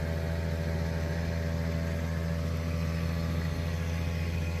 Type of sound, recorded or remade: recorded